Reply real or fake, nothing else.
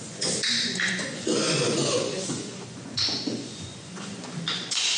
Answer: fake